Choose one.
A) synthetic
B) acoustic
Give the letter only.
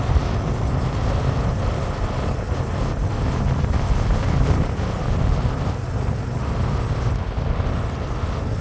B